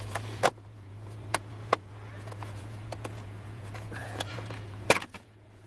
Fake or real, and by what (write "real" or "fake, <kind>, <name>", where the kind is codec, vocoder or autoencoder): fake, vocoder, Vocos